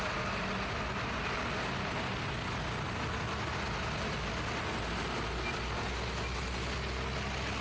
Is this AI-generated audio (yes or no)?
no